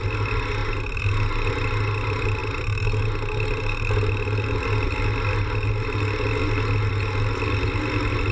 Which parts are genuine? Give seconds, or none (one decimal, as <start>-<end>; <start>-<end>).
0.0-8.3